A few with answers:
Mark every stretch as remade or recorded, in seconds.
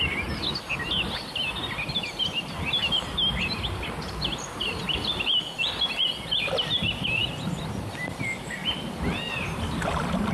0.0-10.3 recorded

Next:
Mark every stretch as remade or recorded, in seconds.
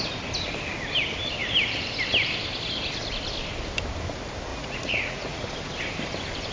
0.0-4.5 recorded; 4.5-5.4 remade; 5.4-6.5 recorded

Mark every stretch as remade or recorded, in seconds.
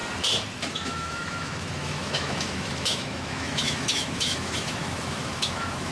0.0-0.7 recorded; 0.7-5.9 remade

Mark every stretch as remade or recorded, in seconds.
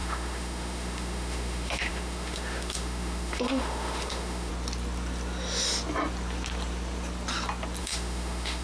0.0-4.5 remade; 4.5-7.8 recorded; 7.8-8.6 remade